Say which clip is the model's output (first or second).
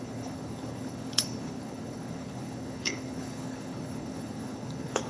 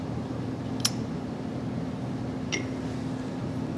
first